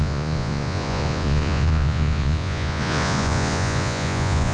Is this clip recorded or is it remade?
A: remade